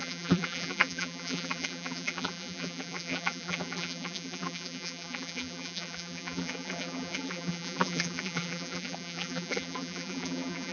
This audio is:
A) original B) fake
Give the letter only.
B